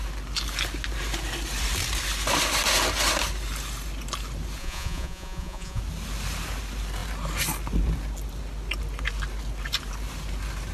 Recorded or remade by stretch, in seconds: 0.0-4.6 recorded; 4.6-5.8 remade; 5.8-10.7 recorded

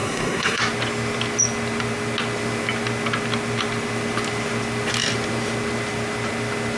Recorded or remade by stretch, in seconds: 0.0-0.6 remade; 0.6-6.8 recorded

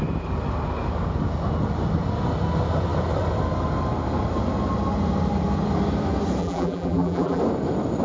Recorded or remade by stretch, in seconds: 0.0-6.4 recorded; 6.4-7.4 remade; 7.4-8.0 recorded